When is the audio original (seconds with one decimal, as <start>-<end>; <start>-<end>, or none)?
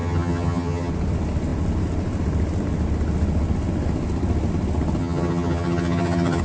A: 0.9-5.0